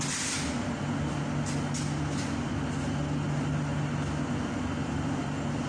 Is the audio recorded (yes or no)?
yes